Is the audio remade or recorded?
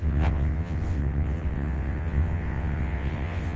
remade